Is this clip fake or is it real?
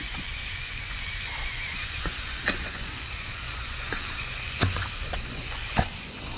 fake